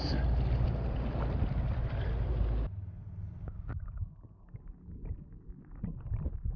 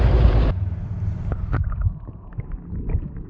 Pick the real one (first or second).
first